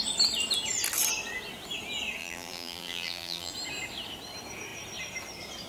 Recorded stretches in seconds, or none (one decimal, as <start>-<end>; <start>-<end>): 0.0-2.2; 3.5-5.7